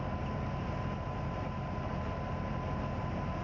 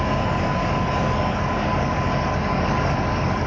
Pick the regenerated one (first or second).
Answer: second